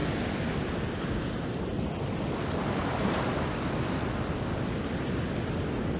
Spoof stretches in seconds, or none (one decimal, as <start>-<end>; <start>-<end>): none